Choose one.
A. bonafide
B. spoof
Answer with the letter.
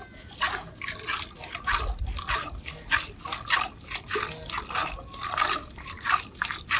A